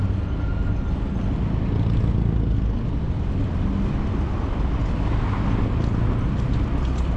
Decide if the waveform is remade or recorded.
recorded